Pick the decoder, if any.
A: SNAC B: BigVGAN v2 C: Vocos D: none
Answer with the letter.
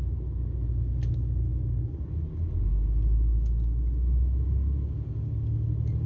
D